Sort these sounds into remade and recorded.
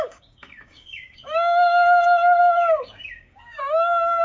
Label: remade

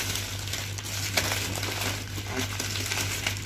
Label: recorded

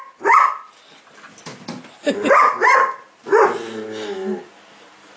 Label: recorded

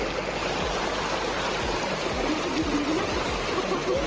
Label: recorded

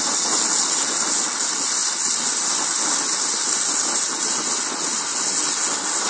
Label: recorded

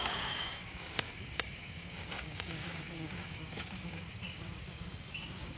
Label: remade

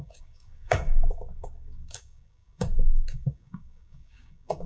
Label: remade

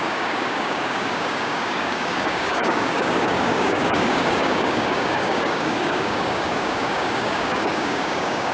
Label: remade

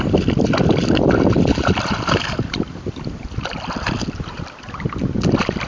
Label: recorded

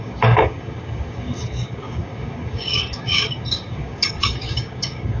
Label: remade